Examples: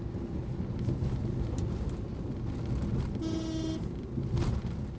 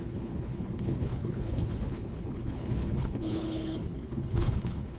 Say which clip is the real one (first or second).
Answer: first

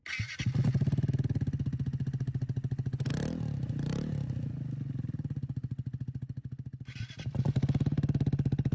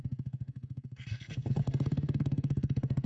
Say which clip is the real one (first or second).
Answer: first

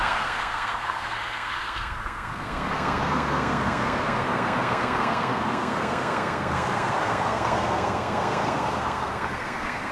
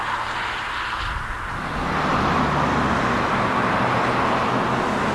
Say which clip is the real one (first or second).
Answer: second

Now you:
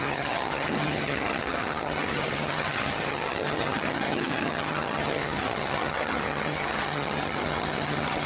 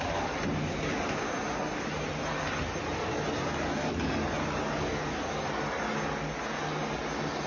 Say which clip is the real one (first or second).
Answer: second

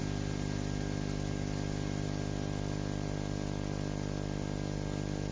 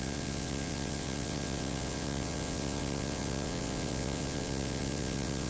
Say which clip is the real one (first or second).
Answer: first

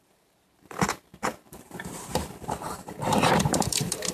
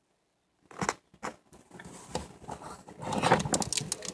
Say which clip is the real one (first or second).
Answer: second